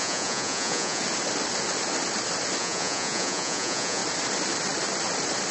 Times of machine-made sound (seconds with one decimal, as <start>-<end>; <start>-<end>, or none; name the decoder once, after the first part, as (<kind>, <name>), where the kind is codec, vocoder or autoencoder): 0.0-1.0 (vocoder, Vocos); 2.6-4.0